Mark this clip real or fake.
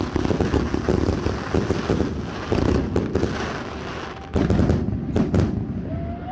real